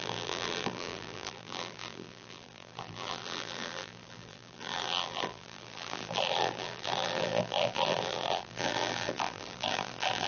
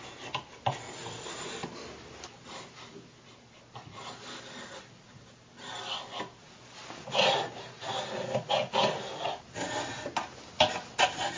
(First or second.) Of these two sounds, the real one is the second